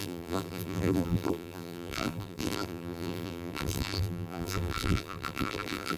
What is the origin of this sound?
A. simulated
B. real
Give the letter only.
A